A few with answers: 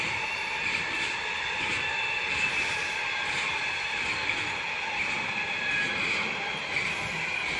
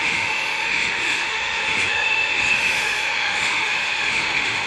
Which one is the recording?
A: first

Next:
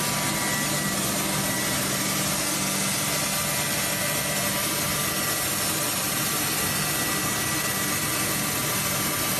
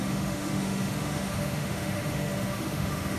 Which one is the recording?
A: first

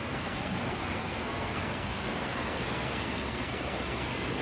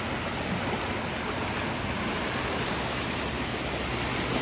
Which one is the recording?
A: second